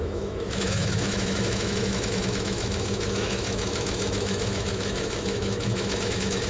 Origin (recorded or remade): remade